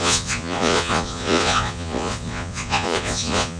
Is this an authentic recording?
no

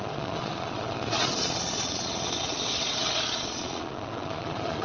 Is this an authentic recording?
no